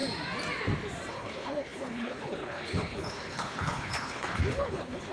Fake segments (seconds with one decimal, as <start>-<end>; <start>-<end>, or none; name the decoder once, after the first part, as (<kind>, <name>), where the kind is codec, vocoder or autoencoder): 1.1-5.1 (codec, HILCodec)